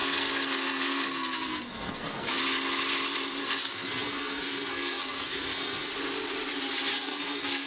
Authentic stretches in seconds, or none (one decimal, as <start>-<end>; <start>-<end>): 2.4-3.4; 5.9-6.9